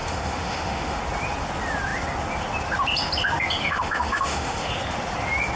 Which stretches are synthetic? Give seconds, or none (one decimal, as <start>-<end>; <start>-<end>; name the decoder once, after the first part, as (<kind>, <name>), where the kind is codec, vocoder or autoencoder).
0.0-1.0 (autoencoder, DAC-VAE); 3.6-4.7

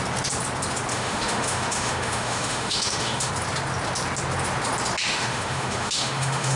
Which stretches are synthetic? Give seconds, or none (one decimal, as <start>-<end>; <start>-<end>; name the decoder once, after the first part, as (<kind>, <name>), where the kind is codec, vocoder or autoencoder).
0.9-3.3 (autoencoder, DAC-VAE); 5.1-6.6

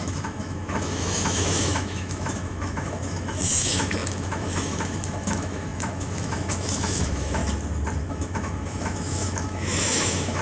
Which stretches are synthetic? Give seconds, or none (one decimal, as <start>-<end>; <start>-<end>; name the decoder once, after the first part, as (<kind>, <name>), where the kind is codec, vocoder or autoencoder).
0.0-7.4 (autoencoder, DAC-VAE); 8.1-10.4

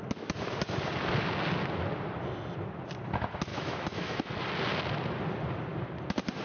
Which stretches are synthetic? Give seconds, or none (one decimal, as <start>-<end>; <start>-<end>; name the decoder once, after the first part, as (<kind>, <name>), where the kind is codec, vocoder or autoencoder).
3.5-4.3 (autoencoder, DAC-VAE)

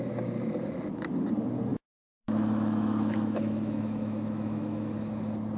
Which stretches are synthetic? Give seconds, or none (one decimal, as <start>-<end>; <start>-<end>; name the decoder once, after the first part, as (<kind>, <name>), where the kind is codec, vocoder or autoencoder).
1.7-5.1 (autoencoder, DAC-VAE)